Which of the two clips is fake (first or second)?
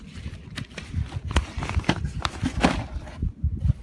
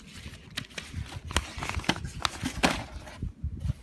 first